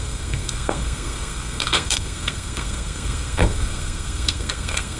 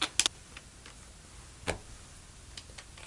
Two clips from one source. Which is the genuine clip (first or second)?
second